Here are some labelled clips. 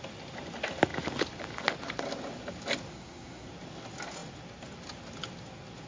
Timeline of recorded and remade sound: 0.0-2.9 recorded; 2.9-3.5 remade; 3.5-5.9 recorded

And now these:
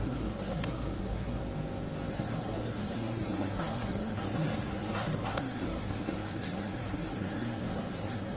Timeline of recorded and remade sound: 0.0-1.4 remade; 1.4-2.1 recorded; 2.1-8.4 remade